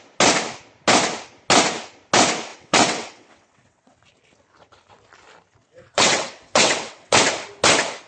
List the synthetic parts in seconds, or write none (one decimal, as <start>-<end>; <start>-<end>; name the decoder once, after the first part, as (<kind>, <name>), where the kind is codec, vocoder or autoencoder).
2.5-4.0 (vocoder, WaveNeXt); 5.6-7.2